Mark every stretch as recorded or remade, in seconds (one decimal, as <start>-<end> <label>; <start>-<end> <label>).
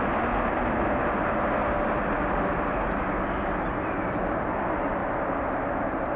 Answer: 0.0-6.2 recorded